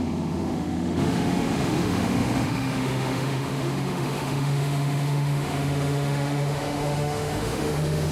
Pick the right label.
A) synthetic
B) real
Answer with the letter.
A